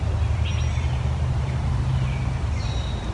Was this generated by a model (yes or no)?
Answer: no